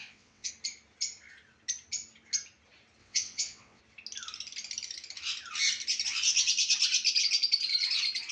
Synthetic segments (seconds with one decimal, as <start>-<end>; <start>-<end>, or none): 0.0-0.5; 3.0-3.8